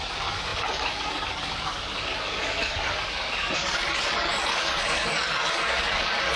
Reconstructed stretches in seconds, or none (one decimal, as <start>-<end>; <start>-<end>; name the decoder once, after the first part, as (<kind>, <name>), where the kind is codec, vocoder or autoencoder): 0.0-6.4 (codec, DAC)